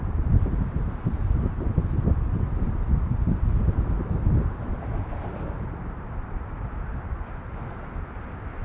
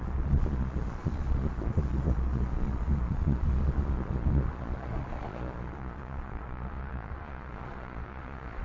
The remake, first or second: second